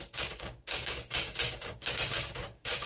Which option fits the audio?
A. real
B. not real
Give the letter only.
B